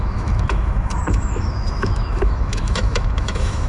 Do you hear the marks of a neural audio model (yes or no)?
yes